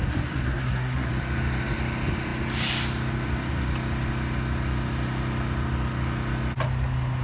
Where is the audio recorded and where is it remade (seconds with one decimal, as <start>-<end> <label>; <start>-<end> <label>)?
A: 0.0-1.1 remade; 1.1-7.2 recorded

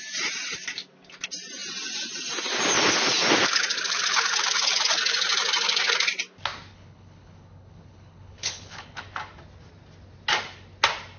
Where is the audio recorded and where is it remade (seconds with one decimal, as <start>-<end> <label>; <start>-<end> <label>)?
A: 0.0-6.7 recorded; 6.7-9.0 remade; 9.0-11.2 recorded